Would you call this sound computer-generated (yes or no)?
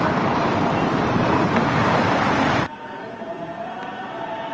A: yes